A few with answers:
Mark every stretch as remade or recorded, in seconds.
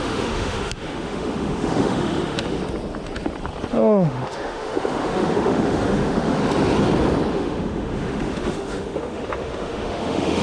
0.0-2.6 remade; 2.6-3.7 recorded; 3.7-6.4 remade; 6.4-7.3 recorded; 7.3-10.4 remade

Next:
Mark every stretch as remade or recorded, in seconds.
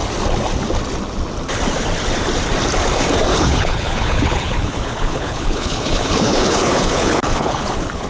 0.0-3.3 recorded; 3.3-8.1 remade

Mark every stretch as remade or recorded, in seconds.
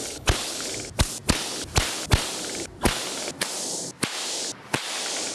0.0-0.7 remade; 0.7-5.3 recorded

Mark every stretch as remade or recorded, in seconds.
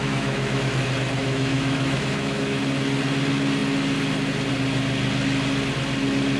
0.0-0.7 remade; 0.7-1.2 recorded; 1.2-2.6 remade; 2.6-6.4 recorded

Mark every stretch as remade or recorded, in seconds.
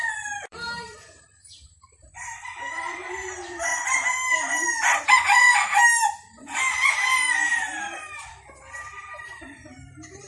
0.0-3.7 remade; 3.7-7.1 recorded; 7.1-10.3 remade